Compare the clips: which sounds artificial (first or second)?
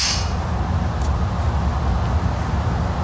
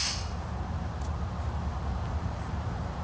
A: second